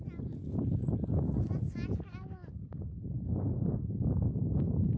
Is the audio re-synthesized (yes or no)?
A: no